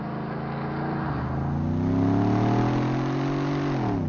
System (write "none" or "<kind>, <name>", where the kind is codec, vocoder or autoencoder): none